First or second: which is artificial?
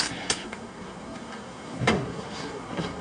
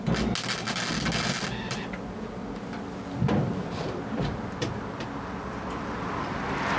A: first